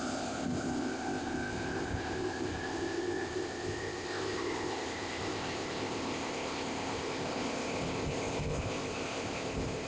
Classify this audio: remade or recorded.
remade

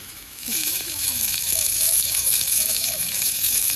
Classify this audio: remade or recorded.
remade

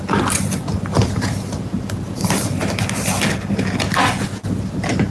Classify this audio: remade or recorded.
recorded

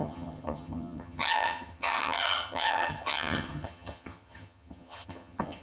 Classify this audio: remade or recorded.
remade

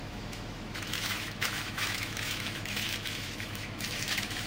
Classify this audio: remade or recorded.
remade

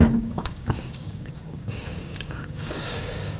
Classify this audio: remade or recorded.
remade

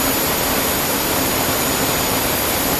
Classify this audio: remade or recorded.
recorded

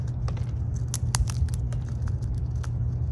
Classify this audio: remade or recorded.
recorded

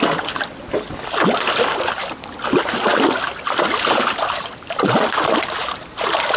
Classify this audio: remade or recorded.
recorded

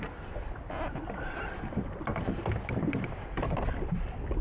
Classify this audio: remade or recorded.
recorded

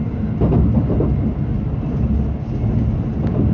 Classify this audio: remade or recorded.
recorded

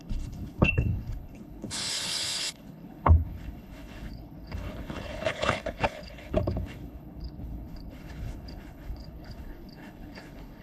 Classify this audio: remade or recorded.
remade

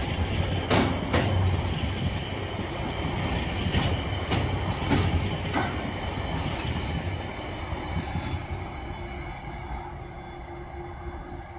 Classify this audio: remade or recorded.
recorded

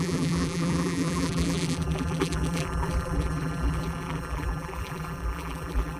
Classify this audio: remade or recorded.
remade